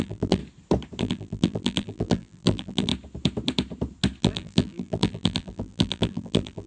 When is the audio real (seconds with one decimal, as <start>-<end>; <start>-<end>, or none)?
0.4-1.0; 2.9-4.2